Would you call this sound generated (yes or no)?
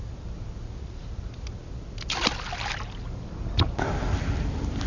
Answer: no